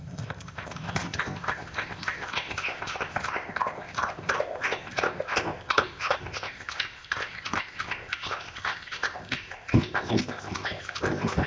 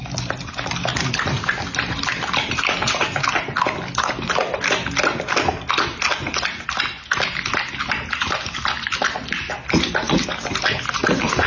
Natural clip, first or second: second